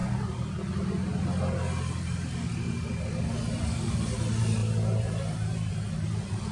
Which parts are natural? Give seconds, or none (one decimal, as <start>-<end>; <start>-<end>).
0.0-4.6; 5.7-6.5